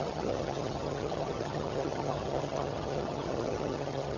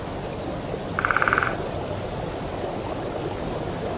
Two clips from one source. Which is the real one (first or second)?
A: second